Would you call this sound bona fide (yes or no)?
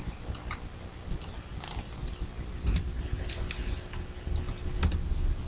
yes